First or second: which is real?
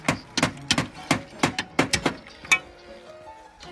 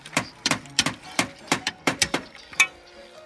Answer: first